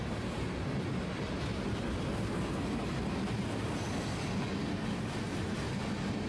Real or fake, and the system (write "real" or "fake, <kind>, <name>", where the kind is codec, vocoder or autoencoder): real